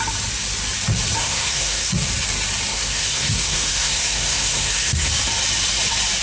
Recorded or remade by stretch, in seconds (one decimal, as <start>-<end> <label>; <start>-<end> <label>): 0.0-1.2 recorded; 1.2-1.9 remade; 1.9-2.7 recorded; 2.7-5.1 remade; 5.1-6.2 recorded